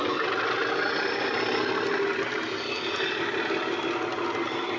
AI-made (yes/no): no